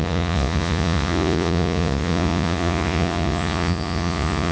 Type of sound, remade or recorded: remade